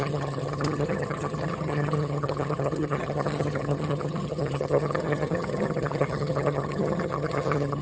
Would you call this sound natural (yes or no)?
no